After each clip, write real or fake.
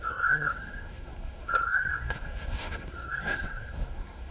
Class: fake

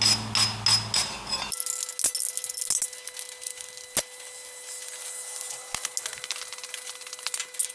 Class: real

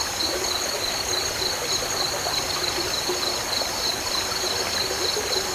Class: real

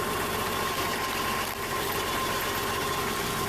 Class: real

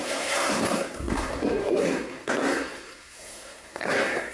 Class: fake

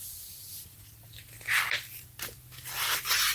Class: real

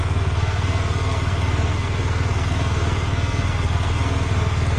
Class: fake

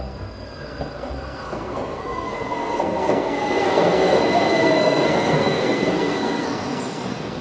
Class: fake